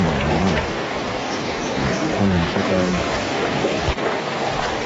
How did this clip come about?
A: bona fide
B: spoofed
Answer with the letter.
B